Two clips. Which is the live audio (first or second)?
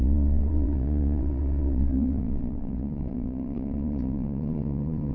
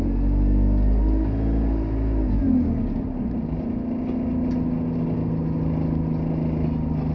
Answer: second